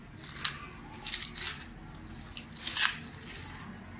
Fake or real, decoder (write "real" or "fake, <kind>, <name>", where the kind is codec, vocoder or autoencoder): real